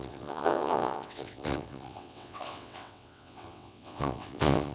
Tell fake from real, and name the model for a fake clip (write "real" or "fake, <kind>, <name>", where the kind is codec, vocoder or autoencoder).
fake, vocoder, WaveNeXt